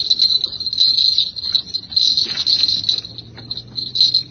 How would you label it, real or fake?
real